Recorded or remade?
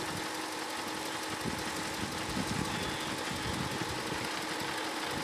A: recorded